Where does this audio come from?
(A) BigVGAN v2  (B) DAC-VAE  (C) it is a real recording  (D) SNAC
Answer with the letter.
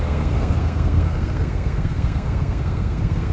D